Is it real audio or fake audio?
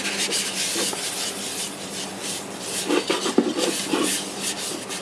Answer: real